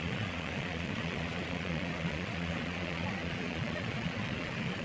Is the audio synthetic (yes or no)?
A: yes